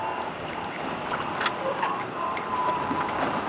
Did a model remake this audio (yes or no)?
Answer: yes